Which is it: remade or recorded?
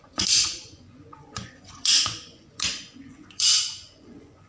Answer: remade